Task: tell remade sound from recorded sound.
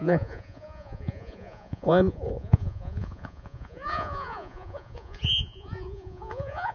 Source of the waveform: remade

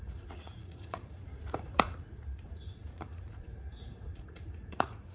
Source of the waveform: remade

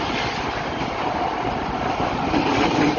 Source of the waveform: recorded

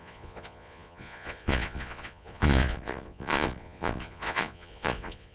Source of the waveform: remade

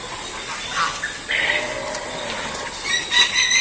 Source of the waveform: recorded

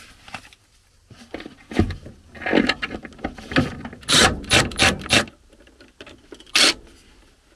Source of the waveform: recorded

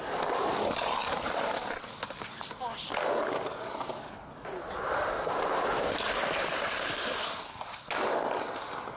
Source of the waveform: recorded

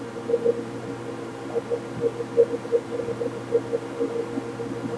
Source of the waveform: recorded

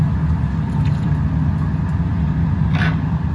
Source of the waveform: recorded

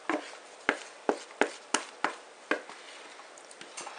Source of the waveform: recorded